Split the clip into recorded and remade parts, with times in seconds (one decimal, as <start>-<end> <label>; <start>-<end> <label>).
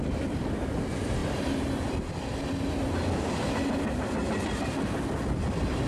0.0-1.2 remade; 1.2-1.8 recorded; 1.8-2.3 remade; 2.3-5.0 recorded; 5.0-5.9 remade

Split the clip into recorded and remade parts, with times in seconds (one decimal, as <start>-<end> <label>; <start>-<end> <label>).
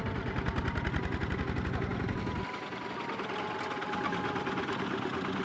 0.0-1.9 recorded; 1.9-5.4 remade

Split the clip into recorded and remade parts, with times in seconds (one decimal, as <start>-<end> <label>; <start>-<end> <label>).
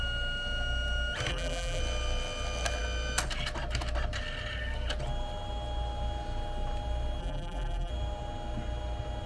0.0-1.3 recorded; 1.3-1.8 remade; 1.8-7.2 recorded; 7.2-7.9 remade; 7.9-9.3 recorded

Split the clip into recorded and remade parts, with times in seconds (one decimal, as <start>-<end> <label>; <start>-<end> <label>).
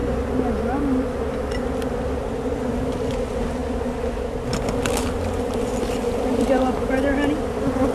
0.0-6.3 recorded; 6.3-7.0 remade; 7.0-7.9 recorded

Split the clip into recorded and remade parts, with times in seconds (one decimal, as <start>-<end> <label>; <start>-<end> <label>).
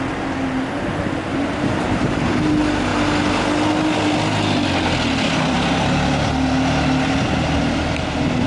0.0-1.3 recorded; 1.3-2.5 remade; 2.5-8.5 recorded